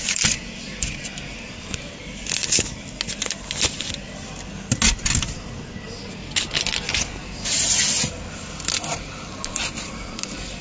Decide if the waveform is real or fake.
real